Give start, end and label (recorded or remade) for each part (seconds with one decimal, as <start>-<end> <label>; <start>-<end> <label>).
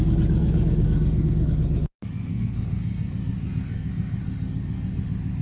0.0-0.4 recorded; 0.4-1.5 remade; 1.5-2.3 recorded; 2.3-5.0 remade; 5.0-5.4 recorded